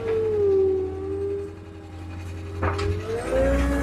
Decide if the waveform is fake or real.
real